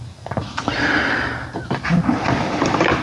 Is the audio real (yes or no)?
no